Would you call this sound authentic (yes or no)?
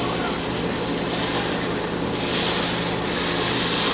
yes